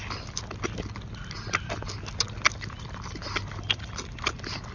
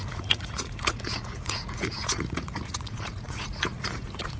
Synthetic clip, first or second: second